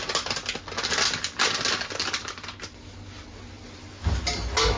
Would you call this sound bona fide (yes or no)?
yes